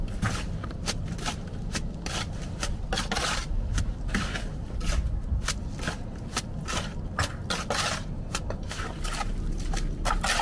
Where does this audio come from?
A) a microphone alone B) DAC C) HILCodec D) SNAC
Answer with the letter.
A